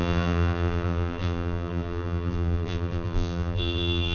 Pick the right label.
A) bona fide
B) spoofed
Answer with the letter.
B